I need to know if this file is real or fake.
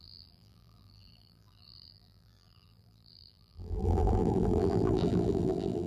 fake